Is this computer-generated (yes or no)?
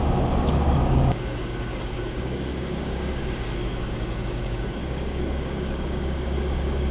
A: yes